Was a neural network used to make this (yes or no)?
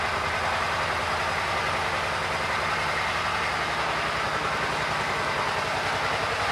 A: no